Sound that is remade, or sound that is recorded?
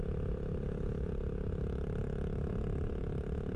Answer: recorded